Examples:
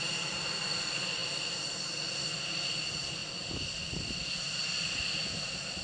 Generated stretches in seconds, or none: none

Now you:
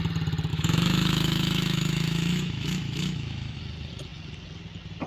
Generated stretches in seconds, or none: 0.5-3.6 (autoencoder, DAC-VAE)

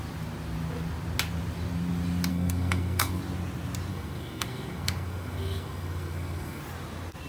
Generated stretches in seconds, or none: 2.3-3.2 (codec, SNAC); 3.9-6.6

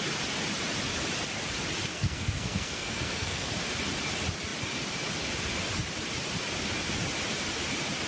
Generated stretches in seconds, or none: 1.9-3.5 (codec, SNAC)

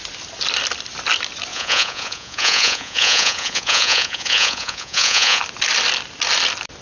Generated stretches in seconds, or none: 1.5-5.4 (vocoder, Vocos)

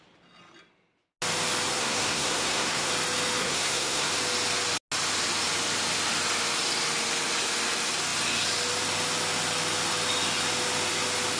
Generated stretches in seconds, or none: 1.7-2.9 (codec, SNAC); 3.4-4.1

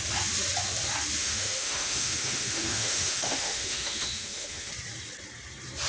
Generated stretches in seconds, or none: 1.2-4.7 (autoencoder, DAC-VAE)

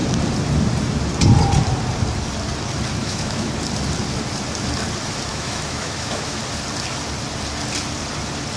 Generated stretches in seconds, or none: 3.0-3.5 (autoencoder, DAC-VAE); 5.3-6.4